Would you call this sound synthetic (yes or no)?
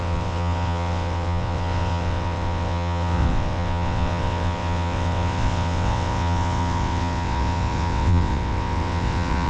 yes